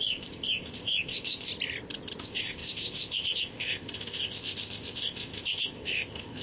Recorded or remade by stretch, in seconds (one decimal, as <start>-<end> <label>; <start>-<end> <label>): 0.0-1.5 remade; 1.5-2.2 recorded; 2.2-6.4 remade